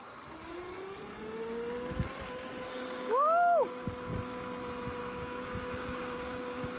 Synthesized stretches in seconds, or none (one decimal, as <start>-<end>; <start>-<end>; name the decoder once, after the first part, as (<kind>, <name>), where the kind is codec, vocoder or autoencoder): 5.0-6.8 (codec, DAC)